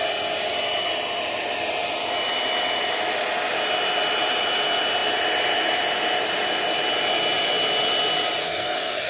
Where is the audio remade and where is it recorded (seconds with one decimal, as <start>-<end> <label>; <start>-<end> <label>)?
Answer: 0.0-8.4 recorded; 8.4-9.1 remade